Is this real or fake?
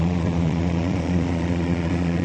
fake